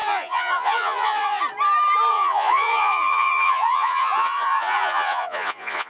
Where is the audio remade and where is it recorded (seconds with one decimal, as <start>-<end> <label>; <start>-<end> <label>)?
0.0-1.4 remade; 1.4-2.1 recorded; 2.1-5.9 remade